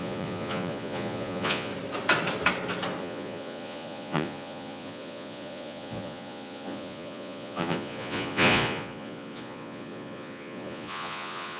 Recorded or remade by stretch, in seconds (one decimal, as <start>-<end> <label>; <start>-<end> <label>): 0.0-1.7 remade; 1.7-3.0 recorded; 3.0-11.6 remade

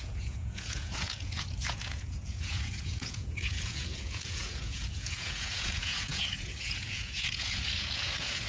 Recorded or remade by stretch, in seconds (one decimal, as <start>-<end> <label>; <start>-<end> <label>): 0.0-8.5 remade